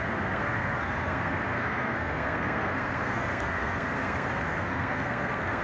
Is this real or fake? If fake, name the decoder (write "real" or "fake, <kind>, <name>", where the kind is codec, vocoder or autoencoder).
fake, codec, SNAC